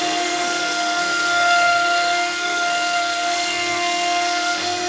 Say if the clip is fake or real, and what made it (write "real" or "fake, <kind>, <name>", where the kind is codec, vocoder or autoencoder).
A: fake, codec, SNAC